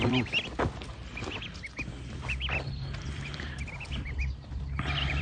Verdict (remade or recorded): remade